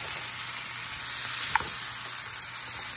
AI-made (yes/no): no